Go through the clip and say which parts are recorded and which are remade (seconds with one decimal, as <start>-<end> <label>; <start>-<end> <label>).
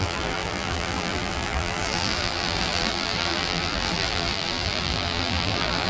0.0-5.9 remade